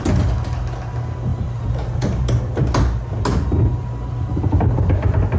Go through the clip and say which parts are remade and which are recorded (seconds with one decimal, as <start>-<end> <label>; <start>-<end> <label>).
0.0-1.3 recorded; 1.3-2.4 remade; 2.4-5.4 recorded